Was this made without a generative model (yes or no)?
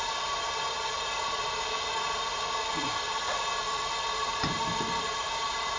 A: yes